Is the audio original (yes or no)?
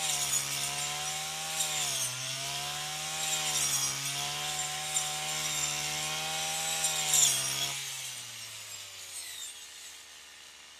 yes